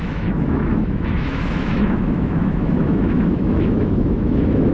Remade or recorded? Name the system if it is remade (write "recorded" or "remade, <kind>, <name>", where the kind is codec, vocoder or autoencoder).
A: remade, autoencoder, DAC-VAE